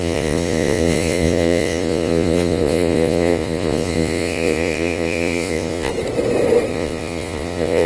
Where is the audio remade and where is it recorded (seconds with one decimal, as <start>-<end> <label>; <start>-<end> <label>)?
0.0-5.9 remade; 5.9-6.7 recorded; 6.7-7.9 remade